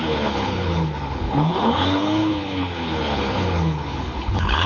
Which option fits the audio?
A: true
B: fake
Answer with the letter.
B